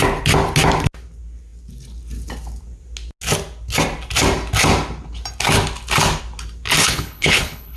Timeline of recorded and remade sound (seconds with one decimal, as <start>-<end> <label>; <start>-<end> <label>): 0.0-6.8 recorded; 6.8-7.8 remade